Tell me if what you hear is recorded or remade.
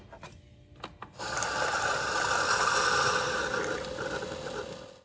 recorded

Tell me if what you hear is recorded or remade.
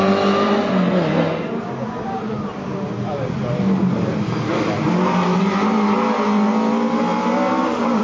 recorded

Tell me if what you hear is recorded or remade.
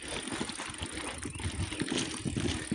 recorded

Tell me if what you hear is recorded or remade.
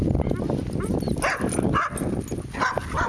recorded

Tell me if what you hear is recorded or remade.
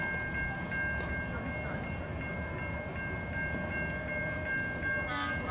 recorded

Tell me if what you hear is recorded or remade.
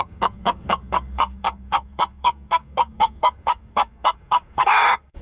remade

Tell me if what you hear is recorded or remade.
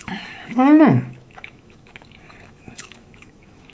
remade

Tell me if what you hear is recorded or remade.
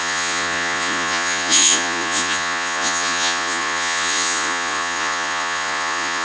remade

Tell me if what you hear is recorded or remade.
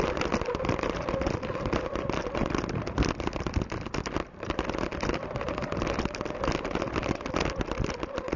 recorded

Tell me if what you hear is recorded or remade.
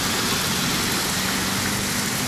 recorded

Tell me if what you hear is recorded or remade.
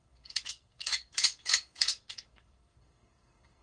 remade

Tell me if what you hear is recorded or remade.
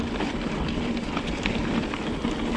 recorded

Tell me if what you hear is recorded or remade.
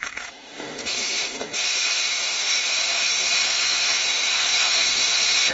remade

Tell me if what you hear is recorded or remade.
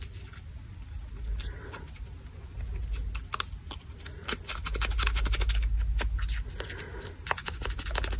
recorded